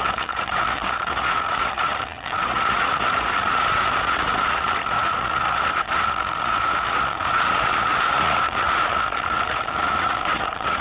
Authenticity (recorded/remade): remade